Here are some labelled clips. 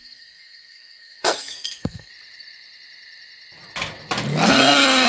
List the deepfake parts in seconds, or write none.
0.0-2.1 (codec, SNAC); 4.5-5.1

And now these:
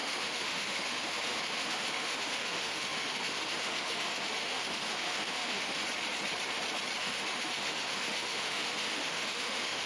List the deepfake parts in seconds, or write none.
0.0-5.8 (autoencoder, DAC-VAE); 7.0-9.9